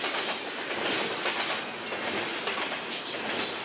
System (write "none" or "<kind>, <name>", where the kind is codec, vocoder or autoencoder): none